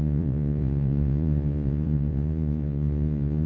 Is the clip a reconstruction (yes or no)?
yes